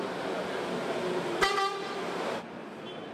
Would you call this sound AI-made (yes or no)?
no